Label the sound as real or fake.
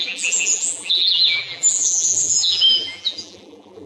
fake